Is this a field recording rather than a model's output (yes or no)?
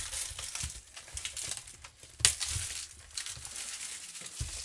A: yes